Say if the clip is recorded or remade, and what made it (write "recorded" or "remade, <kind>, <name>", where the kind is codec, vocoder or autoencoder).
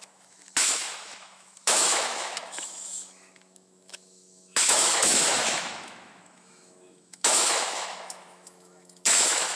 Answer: remade, autoencoder, DAC-VAE